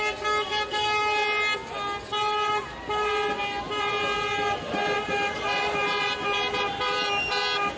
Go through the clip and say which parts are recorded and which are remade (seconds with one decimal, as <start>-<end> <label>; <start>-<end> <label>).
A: 0.0-7.8 recorded